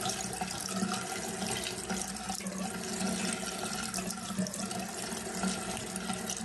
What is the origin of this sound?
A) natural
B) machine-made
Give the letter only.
A